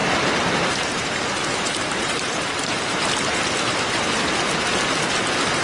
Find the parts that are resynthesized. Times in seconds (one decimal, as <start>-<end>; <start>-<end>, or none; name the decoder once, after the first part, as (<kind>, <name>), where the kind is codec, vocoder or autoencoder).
0.0-3.4 (vocoder, BigVGAN v2)